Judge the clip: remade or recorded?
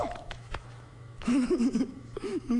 remade